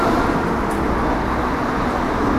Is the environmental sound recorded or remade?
recorded